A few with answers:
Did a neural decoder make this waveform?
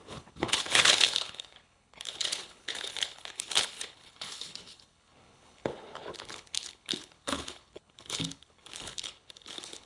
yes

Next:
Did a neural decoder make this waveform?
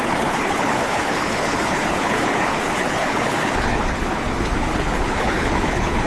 yes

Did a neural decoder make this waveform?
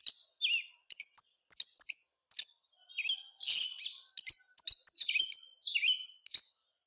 no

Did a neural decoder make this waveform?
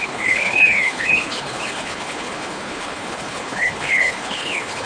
yes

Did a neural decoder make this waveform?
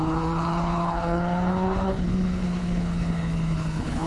yes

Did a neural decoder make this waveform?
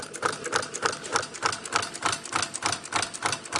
no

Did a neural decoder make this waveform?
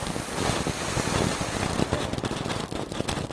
no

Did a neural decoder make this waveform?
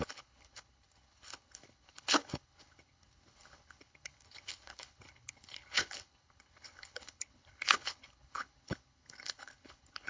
yes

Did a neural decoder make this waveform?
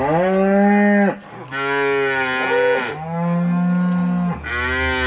no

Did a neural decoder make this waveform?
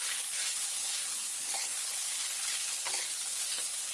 yes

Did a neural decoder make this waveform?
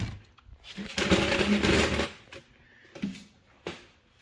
no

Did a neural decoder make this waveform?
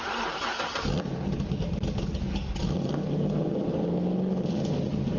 no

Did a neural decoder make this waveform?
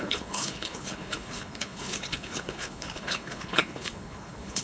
yes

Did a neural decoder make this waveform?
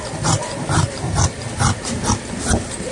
no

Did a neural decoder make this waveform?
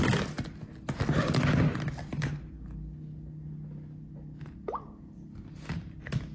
no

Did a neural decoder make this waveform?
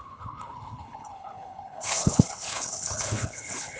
yes